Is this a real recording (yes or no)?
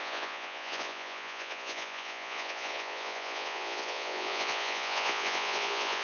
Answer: no